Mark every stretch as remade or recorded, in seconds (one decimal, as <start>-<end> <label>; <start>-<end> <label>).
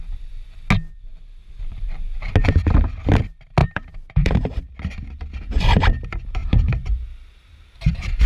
0.0-1.4 recorded; 1.4-2.3 remade; 2.3-3.6 recorded; 3.6-4.5 remade; 4.5-6.4 recorded; 6.4-7.7 remade; 7.7-8.3 recorded